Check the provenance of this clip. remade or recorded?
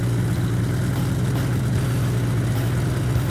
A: recorded